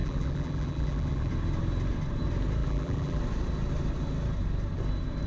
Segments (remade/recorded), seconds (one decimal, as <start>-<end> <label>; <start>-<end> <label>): 0.0-1.3 remade; 1.3-2.6 recorded; 2.6-3.2 remade; 3.2-5.3 recorded